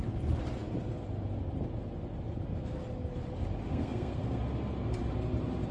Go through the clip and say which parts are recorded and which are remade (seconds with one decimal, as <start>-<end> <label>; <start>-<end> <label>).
0.0-3.7 recorded; 3.7-4.4 remade; 4.4-5.7 recorded